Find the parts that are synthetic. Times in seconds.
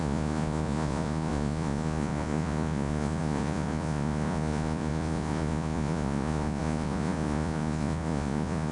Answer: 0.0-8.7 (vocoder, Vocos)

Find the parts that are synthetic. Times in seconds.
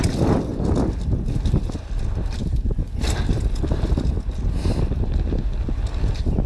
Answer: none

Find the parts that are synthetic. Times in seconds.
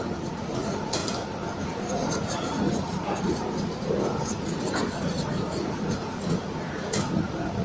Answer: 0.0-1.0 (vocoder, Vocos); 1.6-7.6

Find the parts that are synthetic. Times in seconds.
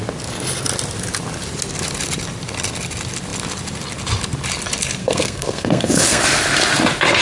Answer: 5.0-6.2 (codec, SNAC)